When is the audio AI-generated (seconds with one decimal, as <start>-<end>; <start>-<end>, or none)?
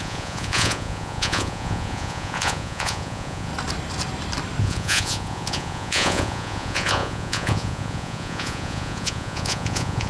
0.0-3.5; 4.6-10.1